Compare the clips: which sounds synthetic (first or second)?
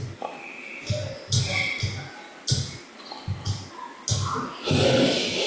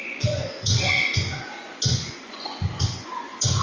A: second